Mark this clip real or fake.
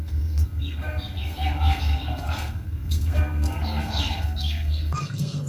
fake